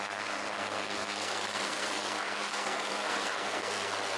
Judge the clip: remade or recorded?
remade